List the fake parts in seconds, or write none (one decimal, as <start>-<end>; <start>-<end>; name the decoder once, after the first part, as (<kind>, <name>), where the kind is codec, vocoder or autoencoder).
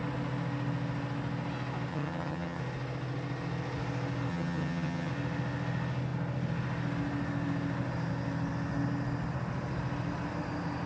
1.9-2.6 (vocoder, HiFi-GAN); 4.3-5.1